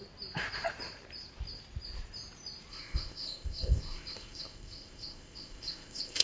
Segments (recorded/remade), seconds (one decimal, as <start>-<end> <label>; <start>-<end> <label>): 0.0-2.7 recorded; 2.7-6.2 remade